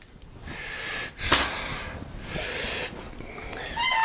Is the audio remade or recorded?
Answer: recorded